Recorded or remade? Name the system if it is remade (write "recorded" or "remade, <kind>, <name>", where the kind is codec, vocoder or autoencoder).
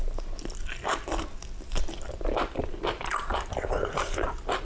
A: recorded